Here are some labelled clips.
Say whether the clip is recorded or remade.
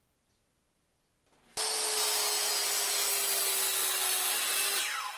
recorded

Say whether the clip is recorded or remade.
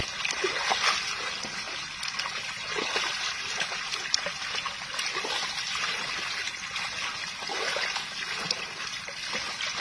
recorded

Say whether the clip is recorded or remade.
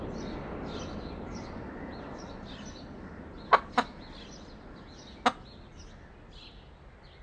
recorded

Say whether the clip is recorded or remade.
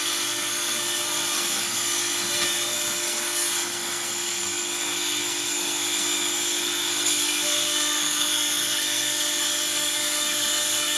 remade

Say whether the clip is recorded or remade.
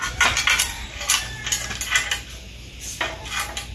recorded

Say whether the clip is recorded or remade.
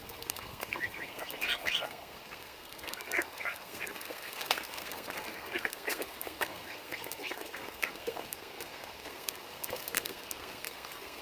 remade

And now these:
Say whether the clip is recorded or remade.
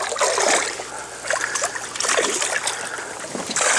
recorded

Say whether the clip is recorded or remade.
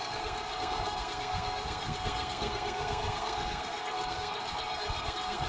remade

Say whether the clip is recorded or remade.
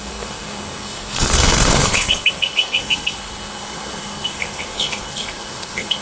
remade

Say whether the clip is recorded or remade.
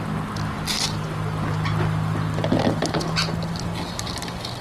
recorded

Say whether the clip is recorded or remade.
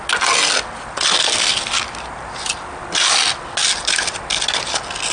recorded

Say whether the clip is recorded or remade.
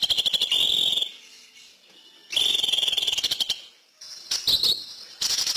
recorded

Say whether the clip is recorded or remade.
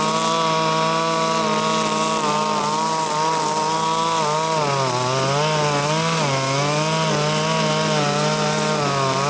recorded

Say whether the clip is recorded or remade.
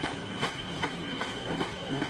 remade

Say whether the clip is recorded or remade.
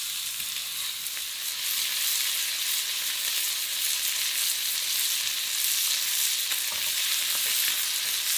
recorded